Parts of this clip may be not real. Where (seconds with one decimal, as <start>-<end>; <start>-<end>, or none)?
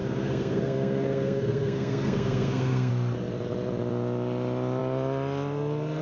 0.0-2.9